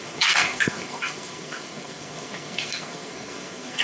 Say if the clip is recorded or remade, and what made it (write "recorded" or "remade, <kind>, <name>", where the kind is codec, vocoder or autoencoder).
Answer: remade, codec, SNAC